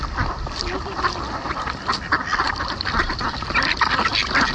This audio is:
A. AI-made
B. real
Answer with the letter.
B